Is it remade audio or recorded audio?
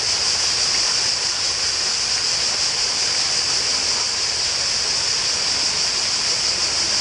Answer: recorded